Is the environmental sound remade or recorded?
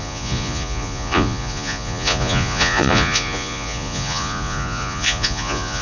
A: remade